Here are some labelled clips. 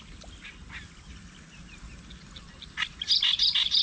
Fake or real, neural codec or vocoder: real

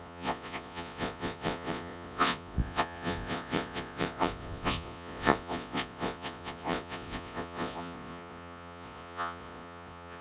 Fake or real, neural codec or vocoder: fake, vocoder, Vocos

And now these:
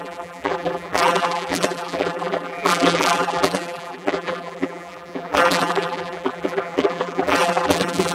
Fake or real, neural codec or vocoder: fake, vocoder, BigVGAN v2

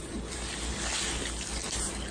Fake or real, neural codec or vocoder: real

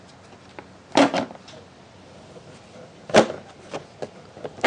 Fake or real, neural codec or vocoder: real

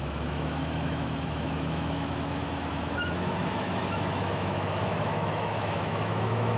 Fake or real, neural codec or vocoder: fake, autoencoder, DAC-VAE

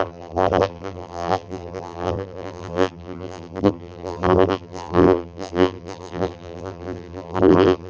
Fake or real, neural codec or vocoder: fake, vocoder, BigVGAN v2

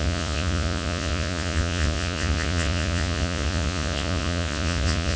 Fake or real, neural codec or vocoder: fake, vocoder, Vocos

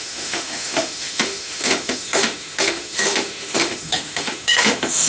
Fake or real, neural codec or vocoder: fake, autoencoder, DAC-VAE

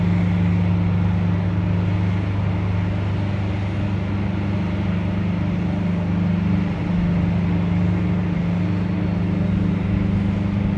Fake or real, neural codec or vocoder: real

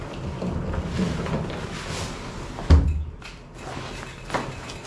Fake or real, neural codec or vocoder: real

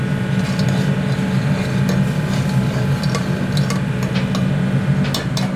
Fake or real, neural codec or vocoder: real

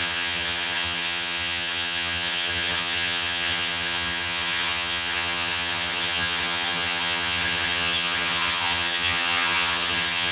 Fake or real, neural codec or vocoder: fake, vocoder, HiFi-GAN